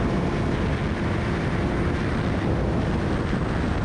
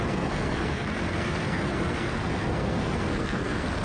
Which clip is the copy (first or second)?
second